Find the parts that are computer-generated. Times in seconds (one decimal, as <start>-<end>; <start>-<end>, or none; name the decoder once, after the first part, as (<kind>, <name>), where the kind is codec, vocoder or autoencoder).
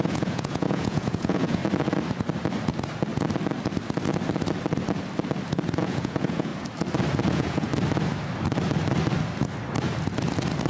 0.0-1.6 (vocoder, Vocos); 5.8-6.5; 7.3-7.7